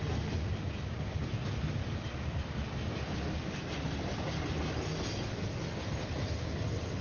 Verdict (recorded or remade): recorded